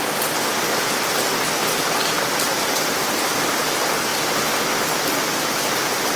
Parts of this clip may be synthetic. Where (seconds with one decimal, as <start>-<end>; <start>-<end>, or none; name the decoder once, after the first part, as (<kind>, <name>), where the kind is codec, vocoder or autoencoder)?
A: none